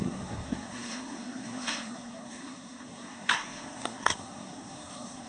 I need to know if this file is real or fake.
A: fake